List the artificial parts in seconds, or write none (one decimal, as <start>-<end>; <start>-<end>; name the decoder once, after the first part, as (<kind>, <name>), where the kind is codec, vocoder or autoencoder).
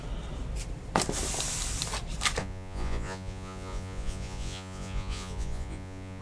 2.4-6.2 (vocoder, Vocos)